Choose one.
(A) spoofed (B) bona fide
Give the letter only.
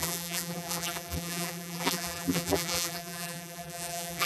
A